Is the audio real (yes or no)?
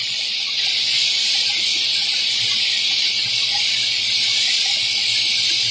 yes